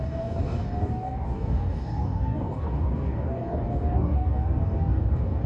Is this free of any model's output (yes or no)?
no